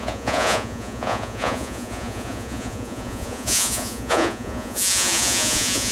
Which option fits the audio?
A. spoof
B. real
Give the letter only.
A